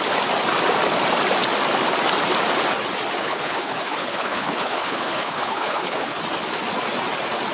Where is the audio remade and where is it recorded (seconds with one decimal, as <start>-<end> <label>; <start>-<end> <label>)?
0.0-3.2 recorded; 3.2-6.2 remade; 6.2-7.5 recorded